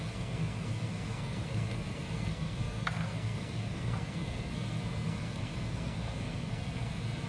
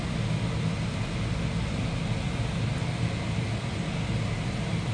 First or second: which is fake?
first